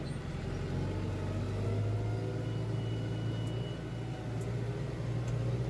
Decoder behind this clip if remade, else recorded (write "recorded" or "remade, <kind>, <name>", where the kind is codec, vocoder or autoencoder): recorded